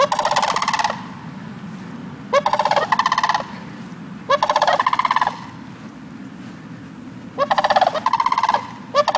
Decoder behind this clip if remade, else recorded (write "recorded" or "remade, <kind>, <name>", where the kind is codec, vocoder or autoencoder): recorded